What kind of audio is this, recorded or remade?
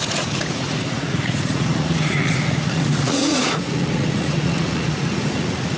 remade